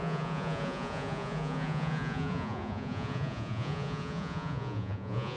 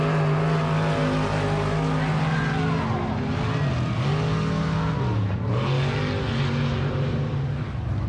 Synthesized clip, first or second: first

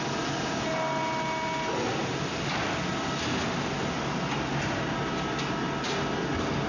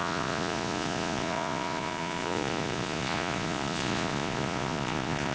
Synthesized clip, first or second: second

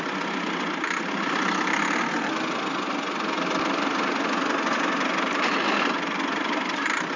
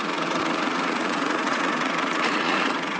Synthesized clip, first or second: second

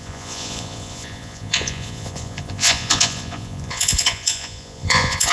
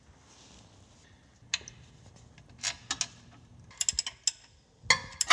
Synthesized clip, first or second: first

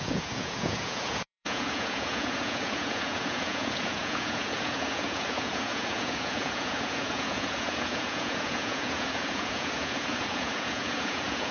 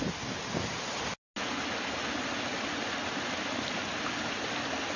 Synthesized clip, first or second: first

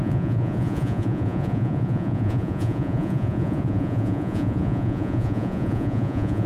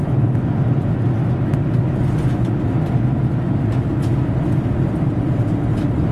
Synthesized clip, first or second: first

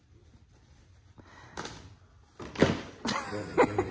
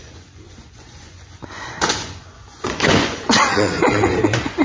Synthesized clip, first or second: second